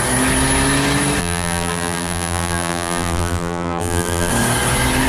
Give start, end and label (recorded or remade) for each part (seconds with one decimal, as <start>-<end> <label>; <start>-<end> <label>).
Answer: 0.0-1.2 recorded; 1.2-4.3 remade; 4.3-5.1 recorded